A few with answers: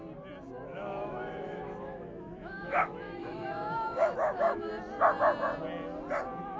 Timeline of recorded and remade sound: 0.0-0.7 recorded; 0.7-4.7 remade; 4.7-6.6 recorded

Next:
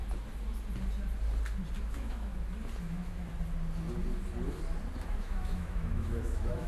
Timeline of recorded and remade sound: 0.0-1.8 recorded; 1.8-2.3 remade; 2.3-2.8 recorded; 2.8-3.3 remade; 3.3-5.0 recorded; 5.0-6.7 remade

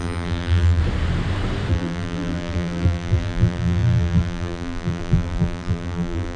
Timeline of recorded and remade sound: 0.0-0.8 remade; 0.8-1.7 recorded; 1.7-6.4 remade

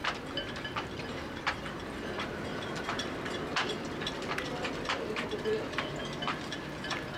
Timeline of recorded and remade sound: 0.0-7.2 recorded